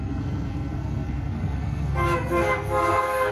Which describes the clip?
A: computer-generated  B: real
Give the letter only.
A